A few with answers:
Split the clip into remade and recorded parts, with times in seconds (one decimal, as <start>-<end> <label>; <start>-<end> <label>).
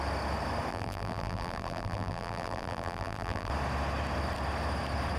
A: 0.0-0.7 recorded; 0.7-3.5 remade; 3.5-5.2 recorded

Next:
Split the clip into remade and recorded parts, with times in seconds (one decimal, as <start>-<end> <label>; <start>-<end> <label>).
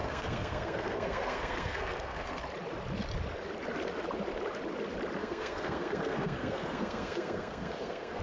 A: 0.0-2.4 remade; 2.4-5.2 recorded; 5.2-8.2 remade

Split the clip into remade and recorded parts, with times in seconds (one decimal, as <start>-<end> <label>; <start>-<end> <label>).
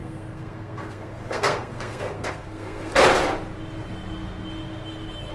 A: 0.0-2.9 remade; 2.9-5.3 recorded